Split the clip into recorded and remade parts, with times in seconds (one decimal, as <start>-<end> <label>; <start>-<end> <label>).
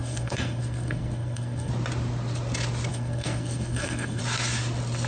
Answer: 0.0-1.7 remade; 1.7-2.9 recorded; 2.9-4.2 remade; 4.2-5.1 recorded